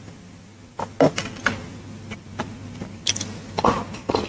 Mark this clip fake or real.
real